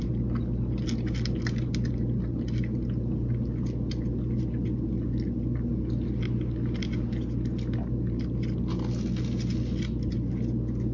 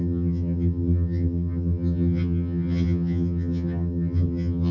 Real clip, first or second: first